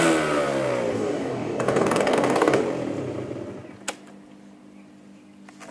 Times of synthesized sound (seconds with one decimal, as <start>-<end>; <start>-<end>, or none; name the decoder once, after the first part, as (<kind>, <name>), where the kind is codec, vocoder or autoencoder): 0.9-2.6 (codec, DAC)